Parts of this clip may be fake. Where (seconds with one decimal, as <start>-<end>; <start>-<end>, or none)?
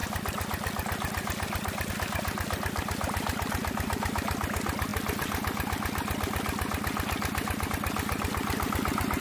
none